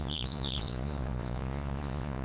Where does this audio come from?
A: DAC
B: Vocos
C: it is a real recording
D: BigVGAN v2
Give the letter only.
B